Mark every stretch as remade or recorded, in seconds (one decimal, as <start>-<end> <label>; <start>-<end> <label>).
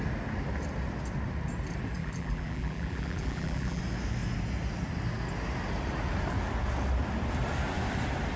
0.0-2.0 recorded; 2.0-3.8 remade; 3.8-8.4 recorded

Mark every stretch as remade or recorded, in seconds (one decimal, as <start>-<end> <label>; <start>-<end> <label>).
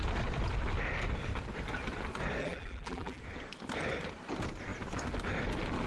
0.0-2.4 recorded; 2.4-3.2 remade; 3.2-5.9 recorded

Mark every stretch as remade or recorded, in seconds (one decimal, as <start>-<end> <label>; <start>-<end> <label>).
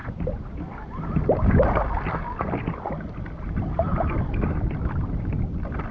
0.0-3.5 recorded; 3.5-5.9 remade